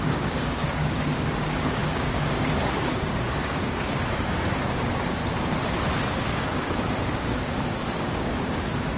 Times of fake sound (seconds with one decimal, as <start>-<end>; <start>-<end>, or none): 0.0-5.2; 6.1-9.0